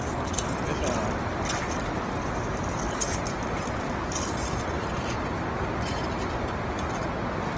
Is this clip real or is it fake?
real